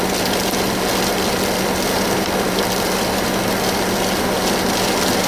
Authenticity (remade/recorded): recorded